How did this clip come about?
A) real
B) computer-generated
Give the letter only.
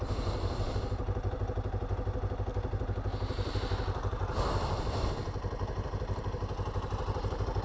A